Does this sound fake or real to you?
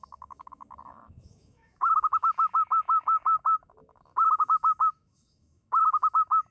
fake